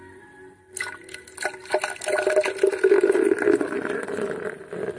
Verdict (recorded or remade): recorded